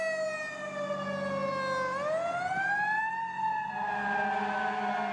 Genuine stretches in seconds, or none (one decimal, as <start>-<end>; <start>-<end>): 0.0-5.1